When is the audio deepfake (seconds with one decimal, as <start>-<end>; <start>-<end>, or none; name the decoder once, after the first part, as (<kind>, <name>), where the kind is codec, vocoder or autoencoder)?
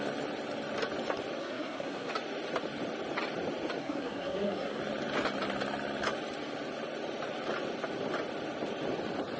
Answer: 1.4-2.1 (codec, SNAC); 3.8-4.8